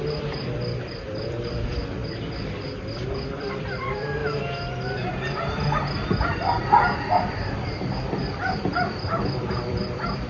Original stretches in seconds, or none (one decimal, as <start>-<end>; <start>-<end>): 2.0-3.4; 4.2-5.5